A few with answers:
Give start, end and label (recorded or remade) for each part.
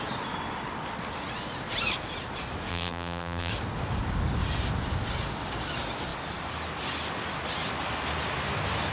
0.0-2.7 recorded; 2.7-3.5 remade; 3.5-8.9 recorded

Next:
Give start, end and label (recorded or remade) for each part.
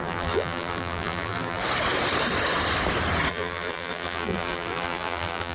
0.0-1.6 remade; 1.6-3.3 recorded; 3.3-5.5 remade